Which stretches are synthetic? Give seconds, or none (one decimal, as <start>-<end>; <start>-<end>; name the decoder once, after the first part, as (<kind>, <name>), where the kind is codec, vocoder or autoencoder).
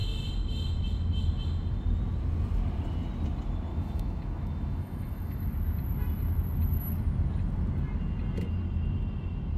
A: 3.7-5.5 (autoencoder, DAC-VAE)